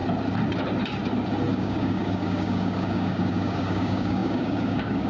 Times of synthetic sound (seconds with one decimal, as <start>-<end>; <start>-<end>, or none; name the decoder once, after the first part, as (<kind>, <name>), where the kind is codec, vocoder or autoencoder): 1.5-5.1 (codec, DAC)